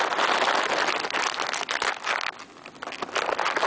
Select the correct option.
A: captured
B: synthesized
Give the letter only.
A